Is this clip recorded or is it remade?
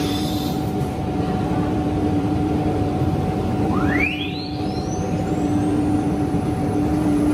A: remade